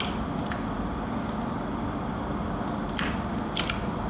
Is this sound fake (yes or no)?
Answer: no